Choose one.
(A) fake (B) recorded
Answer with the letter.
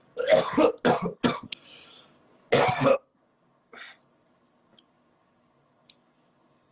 B